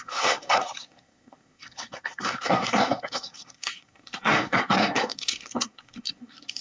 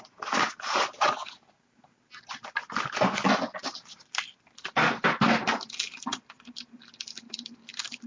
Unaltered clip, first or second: second